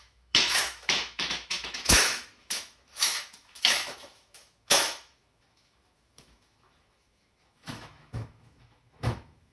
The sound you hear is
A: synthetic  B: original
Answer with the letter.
A